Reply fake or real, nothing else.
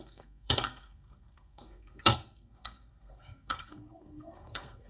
fake